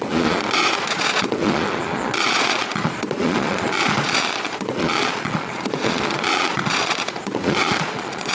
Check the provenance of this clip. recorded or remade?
remade